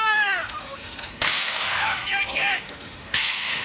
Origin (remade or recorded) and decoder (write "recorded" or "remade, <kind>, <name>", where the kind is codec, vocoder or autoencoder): remade, autoencoder, DAC-VAE